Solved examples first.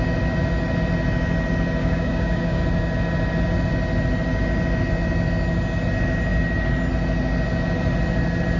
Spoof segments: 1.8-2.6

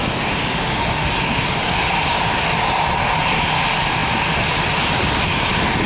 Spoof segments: 0.4-1.1

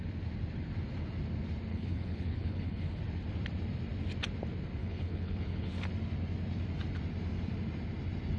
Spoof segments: 1.7-3.0; 4.8-5.7